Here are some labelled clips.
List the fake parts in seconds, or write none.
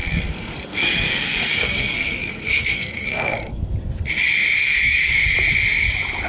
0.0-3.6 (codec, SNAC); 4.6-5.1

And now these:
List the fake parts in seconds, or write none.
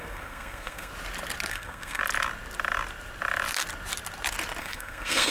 0.0-0.9 (codec, SNAC); 1.5-2.0; 4.6-5.3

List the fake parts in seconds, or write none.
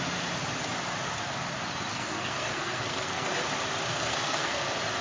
1.9-3.3 (codec, SNAC); 3.9-4.6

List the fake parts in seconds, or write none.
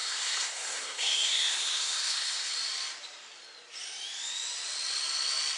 0.0-2.5 (codec, SNAC)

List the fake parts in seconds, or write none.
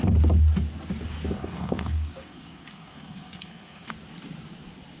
1.4-3.9 (codec, SNAC)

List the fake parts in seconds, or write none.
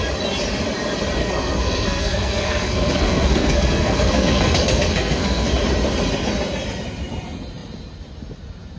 1.2-5.5 (codec, SNAC)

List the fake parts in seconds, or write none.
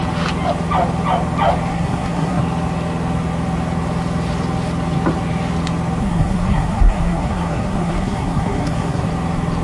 1.7-2.4 (codec, SNAC); 6.0-9.1